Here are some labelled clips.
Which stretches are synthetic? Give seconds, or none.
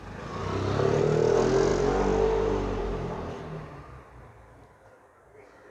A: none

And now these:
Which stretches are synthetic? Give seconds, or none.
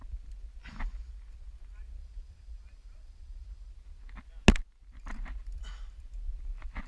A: 2.0-3.7 (vocoder, BigVGAN v2)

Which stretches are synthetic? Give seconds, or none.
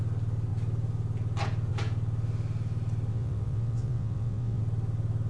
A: 3.1-4.6 (vocoder, WaveNeXt)